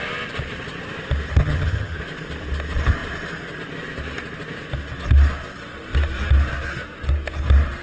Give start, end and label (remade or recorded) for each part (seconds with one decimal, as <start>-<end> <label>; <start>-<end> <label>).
0.0-1.4 recorded; 1.4-2.0 remade; 2.0-7.8 recorded